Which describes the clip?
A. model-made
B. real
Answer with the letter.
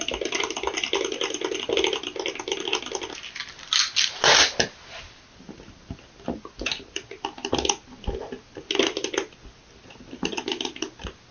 B